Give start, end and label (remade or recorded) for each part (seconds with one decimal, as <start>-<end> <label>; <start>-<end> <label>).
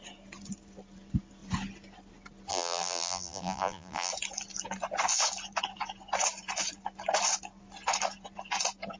0.0-2.5 recorded; 2.5-4.1 remade; 4.1-9.0 recorded